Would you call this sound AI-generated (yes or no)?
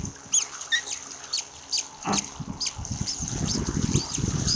no